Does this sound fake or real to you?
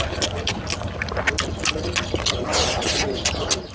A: real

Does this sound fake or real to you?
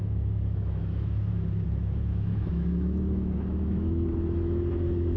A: fake